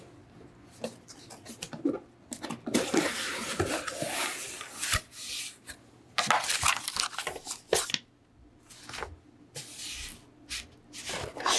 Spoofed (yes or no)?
no